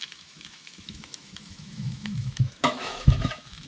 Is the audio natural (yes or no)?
no